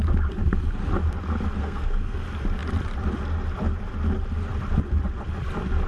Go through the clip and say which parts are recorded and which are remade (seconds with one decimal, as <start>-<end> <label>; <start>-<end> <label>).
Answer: 0.0-1.6 recorded; 1.6-2.2 remade; 2.2-5.9 recorded